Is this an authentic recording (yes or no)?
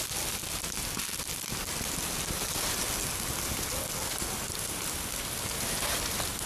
yes